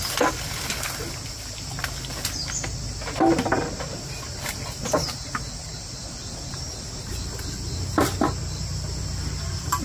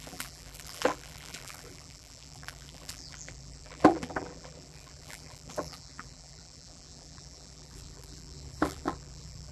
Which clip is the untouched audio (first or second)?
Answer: first